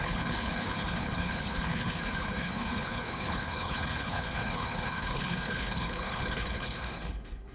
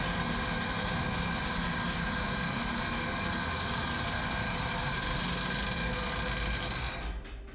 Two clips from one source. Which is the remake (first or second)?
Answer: first